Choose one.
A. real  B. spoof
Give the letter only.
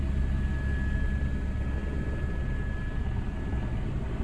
A